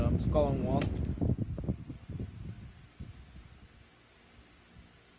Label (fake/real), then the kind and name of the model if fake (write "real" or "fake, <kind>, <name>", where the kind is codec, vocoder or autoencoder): real